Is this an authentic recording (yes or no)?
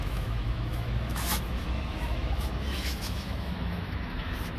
no